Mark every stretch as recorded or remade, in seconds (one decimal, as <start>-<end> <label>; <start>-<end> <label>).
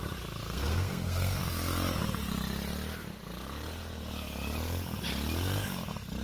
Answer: 0.0-0.4 recorded; 0.4-1.4 remade; 1.4-6.2 recorded